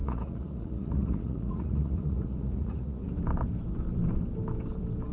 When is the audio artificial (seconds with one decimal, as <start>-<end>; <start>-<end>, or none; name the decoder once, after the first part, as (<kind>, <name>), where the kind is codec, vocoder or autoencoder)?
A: 0.0-3.1 (vocoder, Vocos)